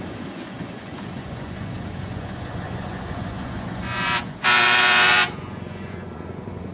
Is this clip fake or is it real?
fake